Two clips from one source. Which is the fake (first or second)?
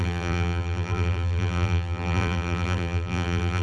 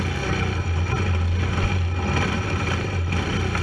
first